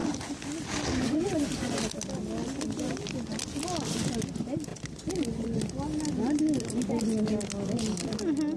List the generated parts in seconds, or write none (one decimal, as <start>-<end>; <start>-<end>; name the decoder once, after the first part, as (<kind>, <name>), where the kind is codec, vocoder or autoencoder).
0.0-1.4 (vocoder, BigVGAN v2)